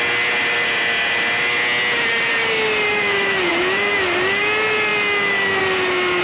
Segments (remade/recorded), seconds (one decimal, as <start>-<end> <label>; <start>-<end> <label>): 0.0-2.9 recorded; 2.9-4.4 remade; 4.4-6.2 recorded